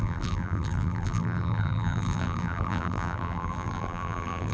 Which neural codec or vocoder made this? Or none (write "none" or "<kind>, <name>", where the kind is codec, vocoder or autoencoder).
vocoder, BigVGAN v2